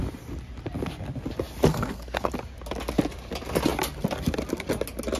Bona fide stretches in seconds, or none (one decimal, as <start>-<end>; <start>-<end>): 0.0-1.7; 2.3-5.2